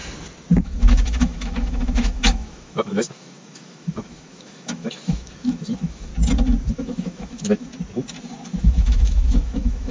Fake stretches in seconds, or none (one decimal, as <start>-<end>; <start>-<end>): 0.6-6.1; 6.7-7.7; 8.6-9.9